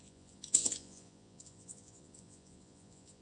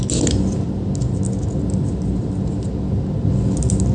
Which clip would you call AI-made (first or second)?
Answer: first